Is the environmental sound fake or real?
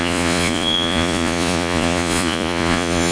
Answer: fake